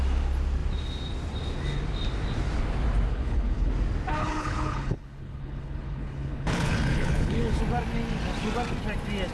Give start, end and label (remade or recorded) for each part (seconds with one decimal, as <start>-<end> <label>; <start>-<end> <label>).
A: 0.0-3.1 recorded; 3.1-3.7 remade; 3.7-4.2 recorded; 4.2-7.6 remade; 7.6-9.3 recorded